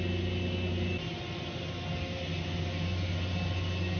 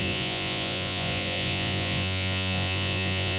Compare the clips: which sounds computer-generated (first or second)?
second